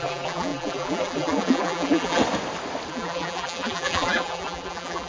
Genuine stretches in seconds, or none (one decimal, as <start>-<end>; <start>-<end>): 2.2-2.9